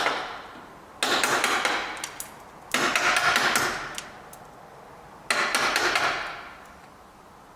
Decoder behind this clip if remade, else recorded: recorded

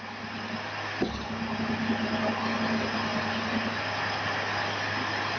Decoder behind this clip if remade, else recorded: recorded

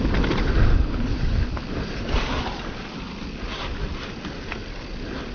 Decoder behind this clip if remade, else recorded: remade, vocoder, BigVGAN v2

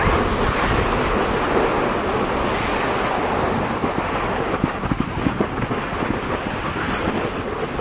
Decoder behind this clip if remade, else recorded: recorded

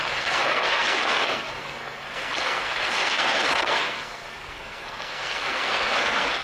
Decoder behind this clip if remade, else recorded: remade, codec, SNAC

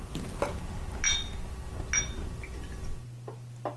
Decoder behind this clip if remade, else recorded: recorded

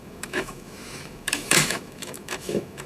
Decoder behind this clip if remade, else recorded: remade, autoencoder, DAC-VAE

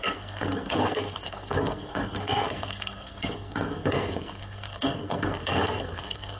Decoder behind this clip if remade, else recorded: remade, codec, SNAC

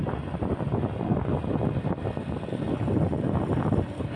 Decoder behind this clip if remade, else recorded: recorded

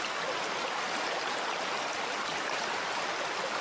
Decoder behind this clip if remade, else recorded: recorded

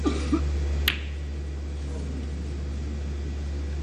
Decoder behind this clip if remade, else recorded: recorded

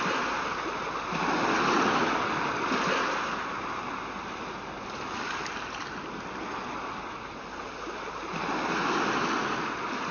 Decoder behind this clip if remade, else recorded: recorded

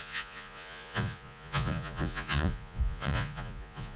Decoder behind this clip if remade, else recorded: remade, vocoder, Vocos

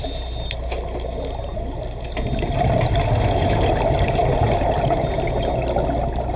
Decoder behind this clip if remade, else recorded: recorded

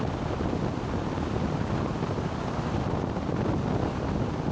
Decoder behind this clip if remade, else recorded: recorded